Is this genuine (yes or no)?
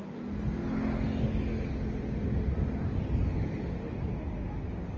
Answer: yes